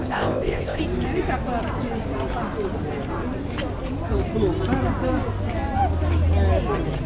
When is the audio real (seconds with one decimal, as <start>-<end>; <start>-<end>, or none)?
0.8-7.1